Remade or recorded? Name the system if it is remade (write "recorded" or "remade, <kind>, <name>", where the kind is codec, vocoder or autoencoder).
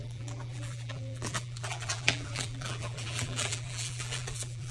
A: remade, vocoder, BigVGAN v2